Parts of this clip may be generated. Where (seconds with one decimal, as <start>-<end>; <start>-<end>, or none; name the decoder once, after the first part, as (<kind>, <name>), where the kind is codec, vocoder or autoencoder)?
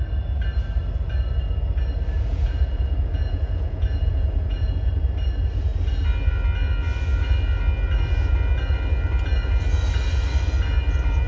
2.3-4.9 (vocoder, Vocos)